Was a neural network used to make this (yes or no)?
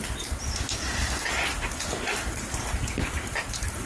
no